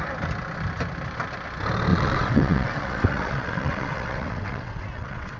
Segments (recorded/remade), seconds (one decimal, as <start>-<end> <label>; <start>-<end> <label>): 0.0-1.9 recorded; 1.9-5.4 remade

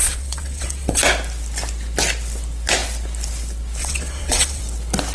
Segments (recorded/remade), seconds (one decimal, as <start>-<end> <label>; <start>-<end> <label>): 0.0-1.0 remade; 1.0-3.8 recorded; 3.8-4.6 remade; 4.6-5.1 recorded

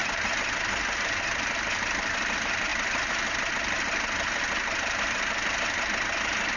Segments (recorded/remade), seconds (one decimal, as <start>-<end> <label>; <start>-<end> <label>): 0.0-6.6 recorded

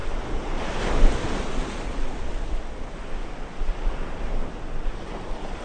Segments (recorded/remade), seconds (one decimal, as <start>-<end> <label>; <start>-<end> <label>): 0.0-5.6 recorded

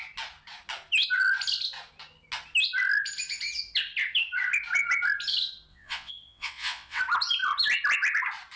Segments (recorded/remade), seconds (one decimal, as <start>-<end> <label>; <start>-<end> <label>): 0.0-5.7 recorded; 5.7-7.0 remade; 7.0-8.6 recorded

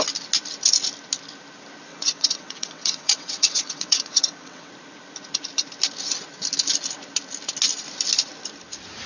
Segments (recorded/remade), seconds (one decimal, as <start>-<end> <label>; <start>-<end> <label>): 0.0-1.9 recorded; 1.9-4.7 remade; 4.7-9.1 recorded

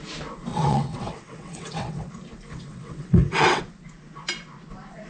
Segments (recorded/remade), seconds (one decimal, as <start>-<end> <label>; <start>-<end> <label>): 0.0-0.5 recorded; 0.5-2.1 remade; 2.1-2.5 recorded; 2.5-3.6 remade; 3.6-5.1 recorded